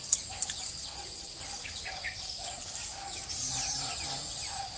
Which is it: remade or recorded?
recorded